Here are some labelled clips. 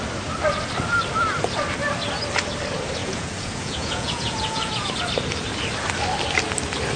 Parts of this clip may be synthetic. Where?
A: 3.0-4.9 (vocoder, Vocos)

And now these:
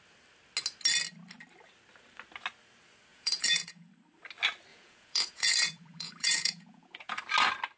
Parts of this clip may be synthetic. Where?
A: 3.1-3.9 (vocoder, Vocos); 4.7-7.2

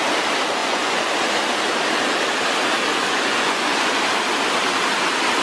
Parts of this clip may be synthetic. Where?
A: 0.6-1.1 (vocoder, Vocos); 2.9-4.0

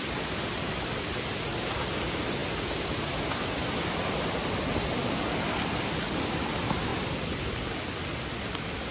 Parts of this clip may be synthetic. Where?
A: none